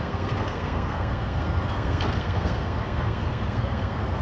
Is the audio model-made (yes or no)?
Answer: yes